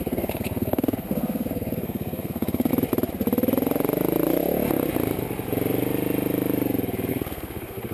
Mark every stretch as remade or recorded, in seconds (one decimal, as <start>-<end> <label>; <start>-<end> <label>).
0.0-2.7 remade; 2.7-7.1 recorded; 7.1-7.9 remade